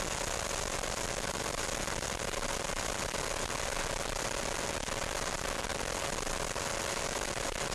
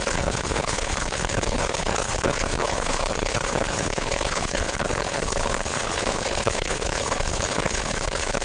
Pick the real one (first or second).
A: first